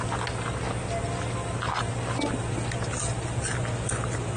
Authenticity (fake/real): real